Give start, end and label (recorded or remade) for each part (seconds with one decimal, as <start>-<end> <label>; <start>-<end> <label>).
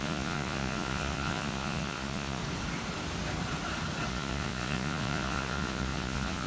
0.0-2.4 remade; 2.4-4.1 recorded; 4.1-6.5 remade